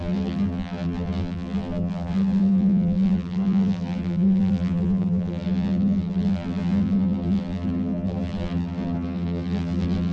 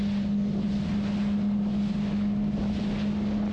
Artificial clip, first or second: first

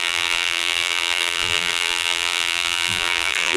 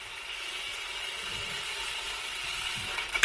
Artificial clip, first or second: first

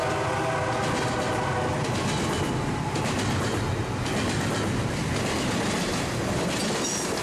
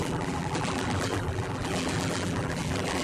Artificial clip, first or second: second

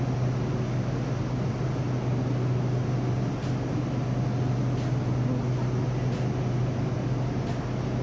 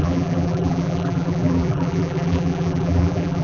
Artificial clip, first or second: second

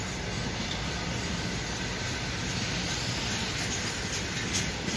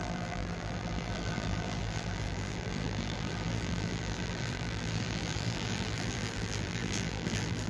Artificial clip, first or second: second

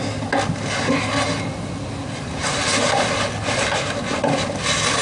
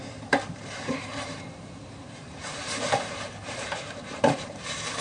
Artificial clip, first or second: second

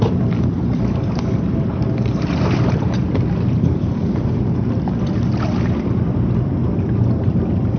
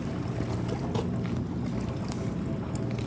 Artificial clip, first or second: first